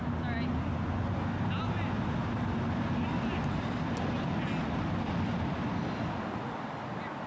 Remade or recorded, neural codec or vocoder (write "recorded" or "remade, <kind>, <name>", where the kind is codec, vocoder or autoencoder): recorded